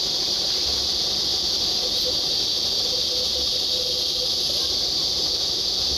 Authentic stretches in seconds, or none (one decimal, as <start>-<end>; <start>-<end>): 0.0-6.0

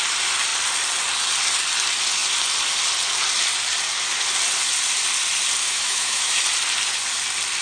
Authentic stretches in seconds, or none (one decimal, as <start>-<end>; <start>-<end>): 0.0-5.6; 6.4-7.6

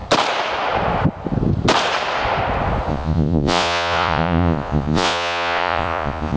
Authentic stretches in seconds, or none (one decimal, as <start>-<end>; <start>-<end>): 0.0-2.9

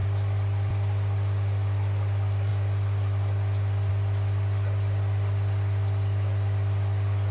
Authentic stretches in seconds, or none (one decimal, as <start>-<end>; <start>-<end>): 0.0-7.3

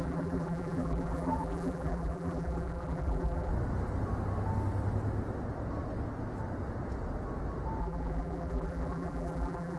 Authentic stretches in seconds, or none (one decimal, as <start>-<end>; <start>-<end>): 3.5-7.8

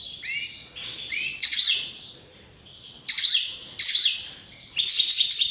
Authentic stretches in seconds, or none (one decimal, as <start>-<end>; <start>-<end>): 0.0-0.6; 2.0-5.5